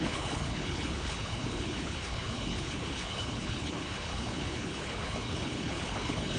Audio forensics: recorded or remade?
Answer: remade